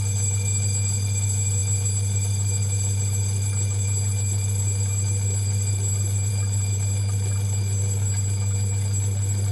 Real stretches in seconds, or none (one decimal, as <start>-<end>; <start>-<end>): 0.0-9.5